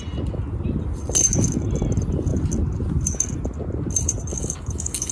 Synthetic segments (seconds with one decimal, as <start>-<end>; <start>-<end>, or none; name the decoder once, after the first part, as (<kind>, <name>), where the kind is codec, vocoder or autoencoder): 4.3-5.1 (codec, DAC)